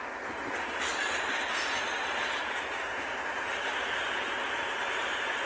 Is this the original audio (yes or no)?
yes